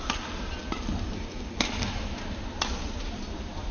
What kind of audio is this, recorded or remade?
recorded